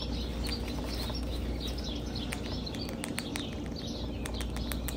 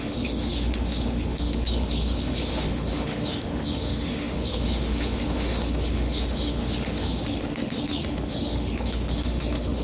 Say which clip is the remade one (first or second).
second